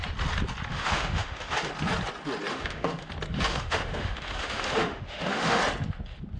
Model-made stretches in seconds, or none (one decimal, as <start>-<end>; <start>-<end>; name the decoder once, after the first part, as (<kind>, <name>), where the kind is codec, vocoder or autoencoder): 0.7-1.7 (autoencoder, DAC-VAE); 2.5-3.1; 3.5-5.6